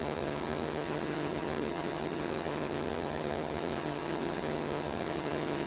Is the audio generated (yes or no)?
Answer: yes